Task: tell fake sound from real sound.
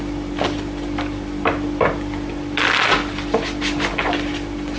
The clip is real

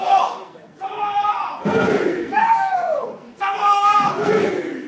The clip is fake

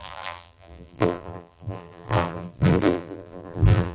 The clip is fake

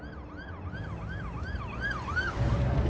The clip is real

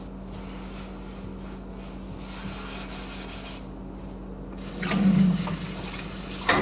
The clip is real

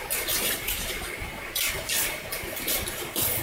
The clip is fake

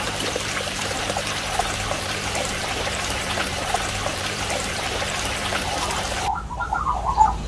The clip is fake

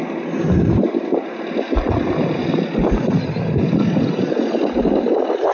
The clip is real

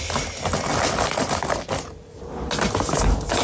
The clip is real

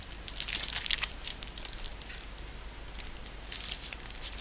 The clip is real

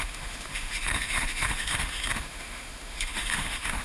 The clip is fake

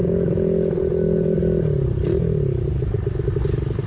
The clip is real